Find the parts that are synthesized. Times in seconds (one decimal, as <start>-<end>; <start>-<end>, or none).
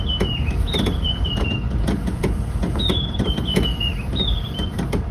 0.0-3.9